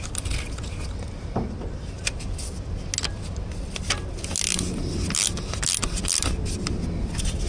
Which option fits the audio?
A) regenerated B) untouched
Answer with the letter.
B